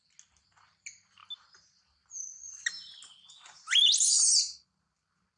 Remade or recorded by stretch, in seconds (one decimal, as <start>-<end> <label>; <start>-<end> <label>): 0.0-5.4 recorded